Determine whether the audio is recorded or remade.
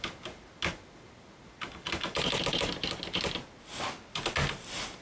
recorded